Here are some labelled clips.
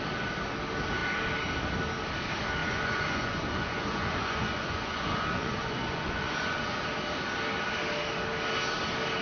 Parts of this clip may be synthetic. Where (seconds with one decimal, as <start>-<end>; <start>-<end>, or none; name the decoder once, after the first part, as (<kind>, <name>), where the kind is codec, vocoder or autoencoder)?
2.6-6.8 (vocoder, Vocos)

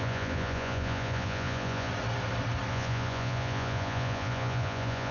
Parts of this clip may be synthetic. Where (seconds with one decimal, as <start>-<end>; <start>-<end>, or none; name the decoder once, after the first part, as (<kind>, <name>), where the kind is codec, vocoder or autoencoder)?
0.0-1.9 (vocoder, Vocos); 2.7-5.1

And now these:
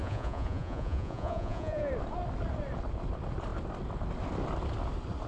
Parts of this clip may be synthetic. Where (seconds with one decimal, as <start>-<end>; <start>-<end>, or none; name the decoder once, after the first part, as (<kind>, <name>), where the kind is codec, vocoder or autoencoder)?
0.0-1.9 (vocoder, Vocos)